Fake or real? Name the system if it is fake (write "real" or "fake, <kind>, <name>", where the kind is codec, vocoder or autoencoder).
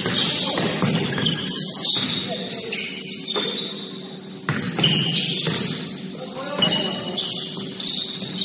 real